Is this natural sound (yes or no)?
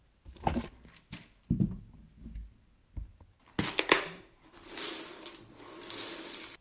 yes